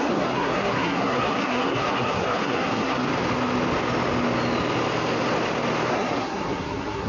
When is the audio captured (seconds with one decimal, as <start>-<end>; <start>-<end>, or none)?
3.1-5.9